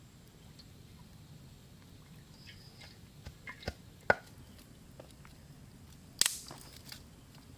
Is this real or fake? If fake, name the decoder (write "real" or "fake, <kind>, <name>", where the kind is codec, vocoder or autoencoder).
real